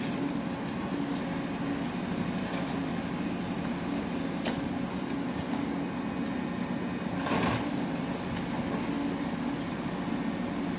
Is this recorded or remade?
recorded